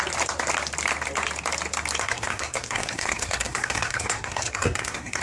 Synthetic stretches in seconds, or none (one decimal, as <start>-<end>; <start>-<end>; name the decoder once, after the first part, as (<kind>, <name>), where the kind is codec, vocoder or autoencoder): 2.0-5.2 (codec, SNAC)